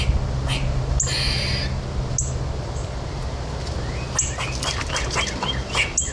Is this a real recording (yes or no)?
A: yes